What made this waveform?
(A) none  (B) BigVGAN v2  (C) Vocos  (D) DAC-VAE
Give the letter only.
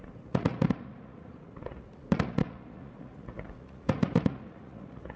C